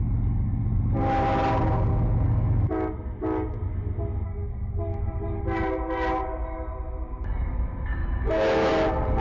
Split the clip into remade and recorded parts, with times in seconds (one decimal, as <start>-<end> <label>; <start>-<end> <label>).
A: 0.0-8.0 recorded; 8.0-8.7 remade; 8.7-9.2 recorded